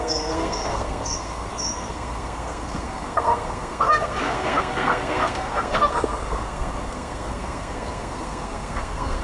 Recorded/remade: remade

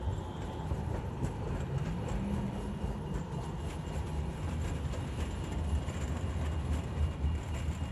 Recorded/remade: recorded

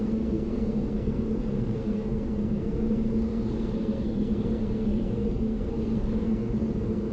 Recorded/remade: remade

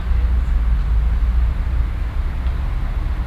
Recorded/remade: recorded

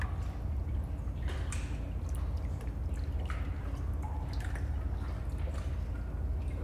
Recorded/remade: recorded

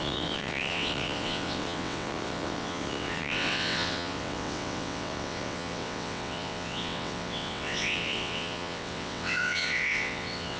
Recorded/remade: remade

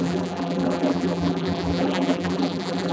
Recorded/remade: remade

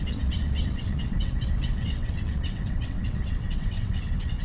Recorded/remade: remade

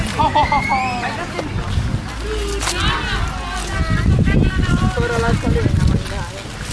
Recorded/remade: recorded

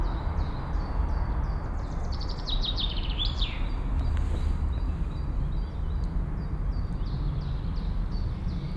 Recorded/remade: recorded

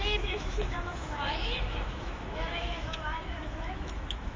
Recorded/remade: remade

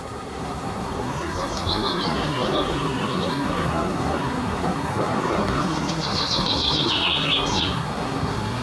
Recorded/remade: remade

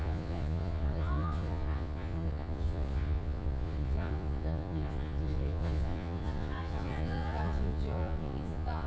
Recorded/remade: remade